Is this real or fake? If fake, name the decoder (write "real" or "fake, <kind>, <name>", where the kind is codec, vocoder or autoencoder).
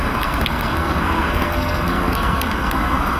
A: fake, codec, SNAC